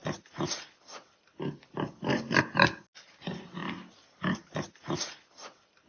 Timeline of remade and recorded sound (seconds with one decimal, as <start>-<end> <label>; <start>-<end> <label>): 0.0-5.9 recorded